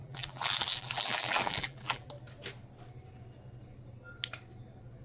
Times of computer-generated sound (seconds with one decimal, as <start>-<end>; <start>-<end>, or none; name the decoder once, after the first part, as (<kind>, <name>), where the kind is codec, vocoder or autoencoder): 0.0-2.1 (vocoder, BigVGAN v2)